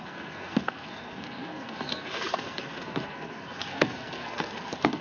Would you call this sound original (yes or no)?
no